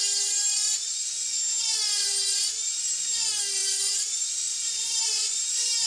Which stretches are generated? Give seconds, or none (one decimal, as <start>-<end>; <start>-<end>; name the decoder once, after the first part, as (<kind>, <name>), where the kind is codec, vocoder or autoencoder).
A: 3.6-5.9 (vocoder, BigVGAN v2)